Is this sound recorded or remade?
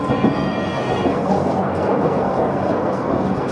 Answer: remade